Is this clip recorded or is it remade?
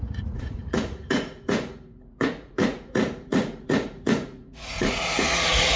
remade